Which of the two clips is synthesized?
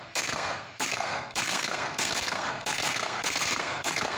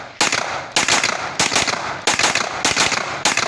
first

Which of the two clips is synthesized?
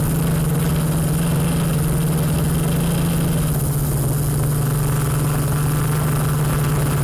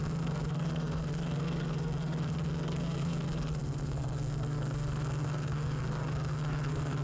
second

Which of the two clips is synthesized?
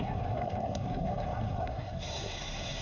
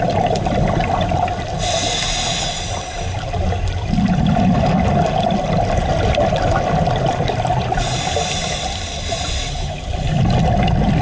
first